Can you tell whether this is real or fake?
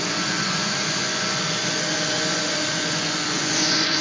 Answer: fake